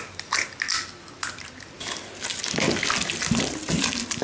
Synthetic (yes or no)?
no